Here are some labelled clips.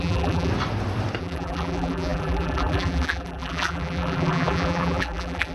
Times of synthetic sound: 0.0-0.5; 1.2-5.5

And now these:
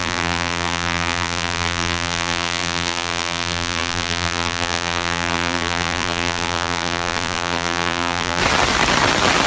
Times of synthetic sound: 0.0-8.4

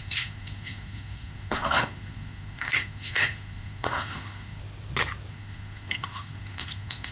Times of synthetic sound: 0.0-4.6; 5.3-7.1